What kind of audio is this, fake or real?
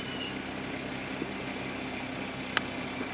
real